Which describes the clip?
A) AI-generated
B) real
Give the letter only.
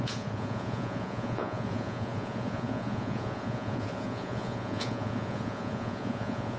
A